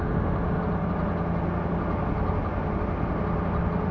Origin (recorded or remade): recorded